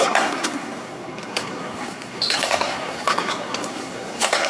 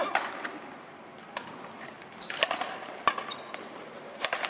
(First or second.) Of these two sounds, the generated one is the first